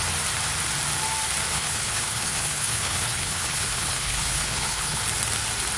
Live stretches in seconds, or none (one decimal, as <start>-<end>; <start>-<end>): 0.0-1.5; 5.0-5.8

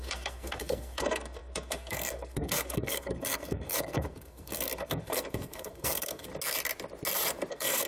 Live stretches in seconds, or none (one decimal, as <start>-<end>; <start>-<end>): 6.3-7.5

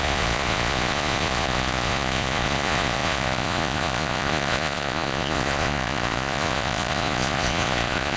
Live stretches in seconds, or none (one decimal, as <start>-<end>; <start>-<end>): none

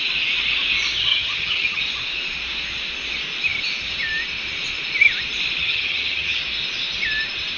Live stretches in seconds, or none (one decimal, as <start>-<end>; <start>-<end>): 0.0-1.1; 1.8-5.6; 6.4-7.6

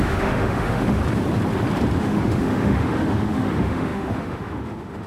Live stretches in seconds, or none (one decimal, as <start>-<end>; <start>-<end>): 1.0-2.0